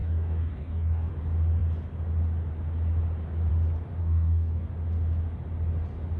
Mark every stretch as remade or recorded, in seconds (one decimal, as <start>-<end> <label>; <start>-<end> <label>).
0.0-1.1 remade; 1.1-4.0 recorded; 4.0-4.7 remade; 4.7-6.2 recorded